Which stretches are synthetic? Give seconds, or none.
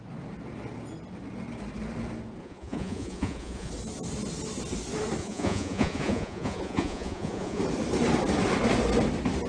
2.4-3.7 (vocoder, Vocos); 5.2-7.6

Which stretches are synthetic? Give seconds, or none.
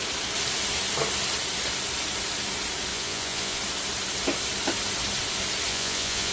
2.9-3.6 (vocoder, Vocos); 5.7-6.3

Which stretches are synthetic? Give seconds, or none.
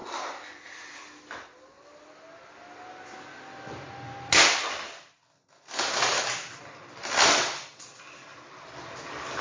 none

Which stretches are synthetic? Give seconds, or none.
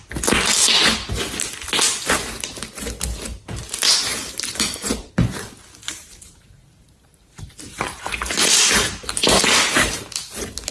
4.1-5.1 (vocoder, BigVGAN v2); 5.8-10.0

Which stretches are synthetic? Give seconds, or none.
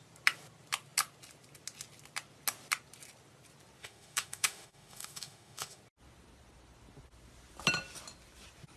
3.8-5.8 (autoencoder, DAC-VAE)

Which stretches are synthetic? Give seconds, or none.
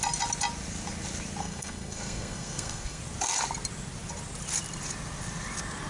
1.4-3.0 (codec, SNAC)